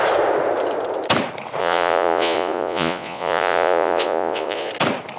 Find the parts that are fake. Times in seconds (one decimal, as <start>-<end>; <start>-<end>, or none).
1.6-4.7